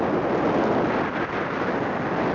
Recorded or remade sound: recorded